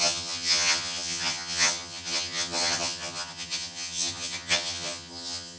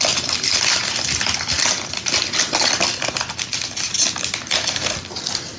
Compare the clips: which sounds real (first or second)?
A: second